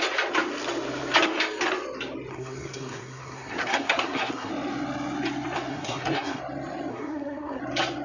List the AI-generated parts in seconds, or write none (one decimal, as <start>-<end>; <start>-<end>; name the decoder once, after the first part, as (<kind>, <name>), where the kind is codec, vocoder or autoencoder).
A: 2.3-4.5 (codec, SNAC); 5.7-6.4; 6.9-7.6